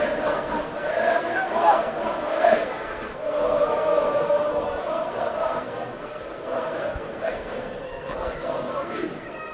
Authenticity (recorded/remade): remade